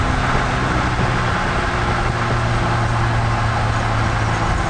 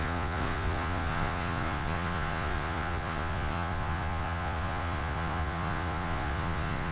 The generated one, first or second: second